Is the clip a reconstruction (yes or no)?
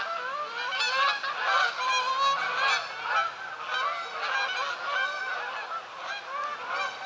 no